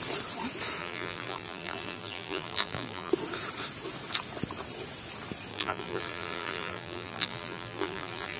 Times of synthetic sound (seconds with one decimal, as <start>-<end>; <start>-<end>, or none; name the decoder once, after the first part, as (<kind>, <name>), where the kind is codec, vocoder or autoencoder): 0.8-3.1 (vocoder, BigVGAN v2); 5.5-8.4